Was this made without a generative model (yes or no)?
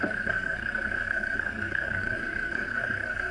no